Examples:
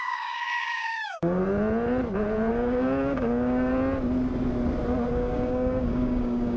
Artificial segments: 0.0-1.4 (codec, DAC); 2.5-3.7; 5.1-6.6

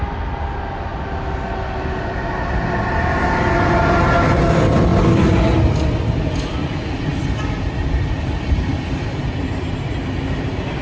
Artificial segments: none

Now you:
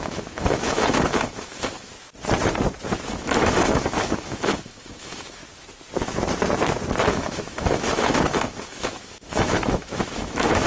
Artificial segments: 0.0-1.9 (autoencoder, DAC-VAE); 3.1-5.4; 7.1-10.7